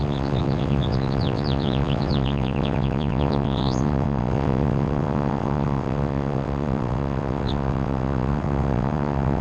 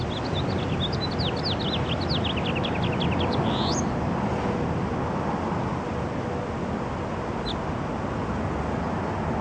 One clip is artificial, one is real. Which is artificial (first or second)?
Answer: first